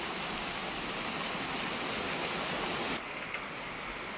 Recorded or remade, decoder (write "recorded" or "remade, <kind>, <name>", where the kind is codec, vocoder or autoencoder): recorded